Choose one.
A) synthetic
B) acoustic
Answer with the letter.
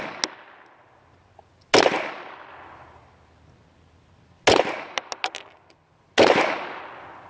B